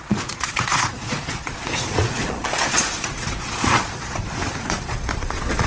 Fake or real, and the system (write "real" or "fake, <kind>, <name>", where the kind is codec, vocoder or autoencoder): fake, vocoder, Vocos